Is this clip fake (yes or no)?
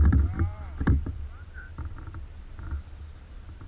no